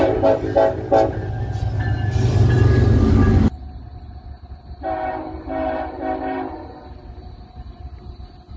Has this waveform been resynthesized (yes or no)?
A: no